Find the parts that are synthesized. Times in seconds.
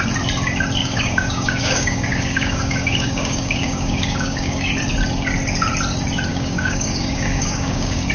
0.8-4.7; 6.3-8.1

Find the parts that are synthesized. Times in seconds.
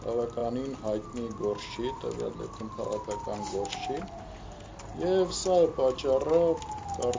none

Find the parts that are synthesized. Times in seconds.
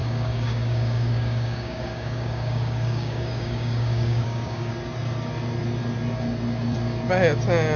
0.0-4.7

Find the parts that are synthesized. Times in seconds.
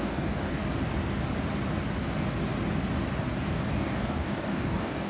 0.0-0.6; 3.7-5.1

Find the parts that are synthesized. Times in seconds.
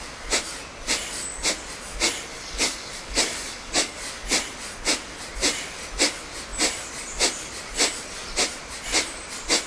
2.3-4.0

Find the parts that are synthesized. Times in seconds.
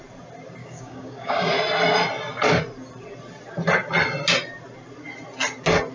0.6-1.5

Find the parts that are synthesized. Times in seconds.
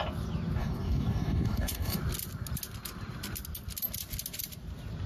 0.6-2.0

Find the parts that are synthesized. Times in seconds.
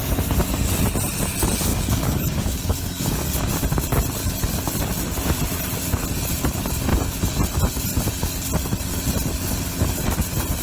1.7-3.2